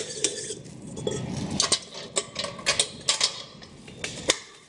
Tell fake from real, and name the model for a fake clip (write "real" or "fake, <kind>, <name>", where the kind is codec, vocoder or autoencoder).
real